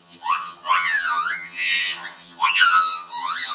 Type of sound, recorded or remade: remade